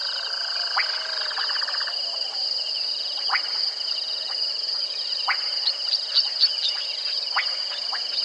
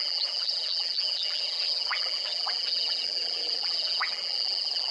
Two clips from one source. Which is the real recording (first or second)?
first